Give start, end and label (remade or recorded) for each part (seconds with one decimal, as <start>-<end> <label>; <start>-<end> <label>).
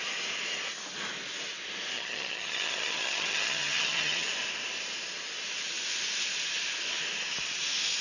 0.0-1.9 recorded; 1.9-4.3 remade; 4.3-8.0 recorded